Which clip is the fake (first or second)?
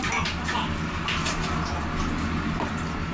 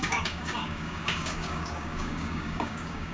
second